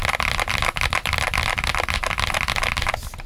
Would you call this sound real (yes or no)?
yes